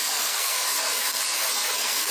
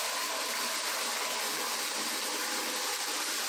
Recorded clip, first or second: second